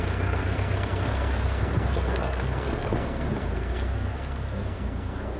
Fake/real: fake